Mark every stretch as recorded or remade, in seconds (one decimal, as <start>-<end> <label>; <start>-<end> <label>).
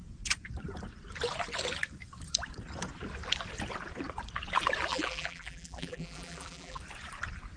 0.0-4.9 recorded; 4.9-6.8 remade; 6.8-7.6 recorded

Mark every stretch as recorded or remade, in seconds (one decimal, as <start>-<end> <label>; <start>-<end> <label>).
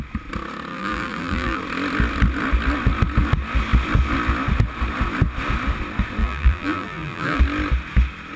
0.0-0.7 recorded; 0.7-1.6 remade; 1.6-6.2 recorded; 6.2-7.4 remade; 7.4-8.4 recorded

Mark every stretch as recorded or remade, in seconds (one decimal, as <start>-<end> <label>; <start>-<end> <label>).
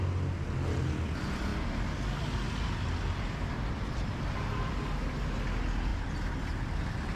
0.0-3.4 recorded; 3.4-4.7 remade; 4.7-5.9 recorded; 5.9-6.8 remade; 6.8-7.2 recorded